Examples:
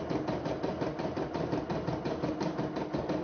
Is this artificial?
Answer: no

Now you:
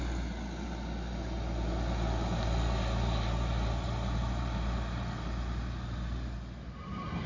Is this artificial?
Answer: no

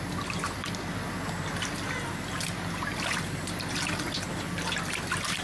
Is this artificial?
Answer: no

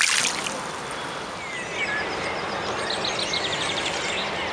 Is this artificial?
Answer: no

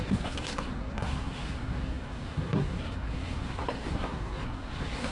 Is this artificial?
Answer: yes